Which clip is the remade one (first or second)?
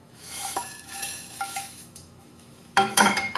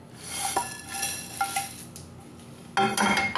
first